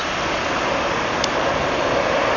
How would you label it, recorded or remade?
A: recorded